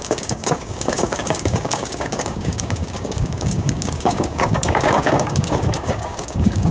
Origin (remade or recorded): remade